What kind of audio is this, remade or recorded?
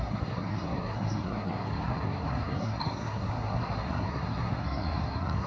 remade